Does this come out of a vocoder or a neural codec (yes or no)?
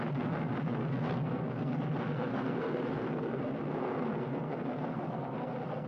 yes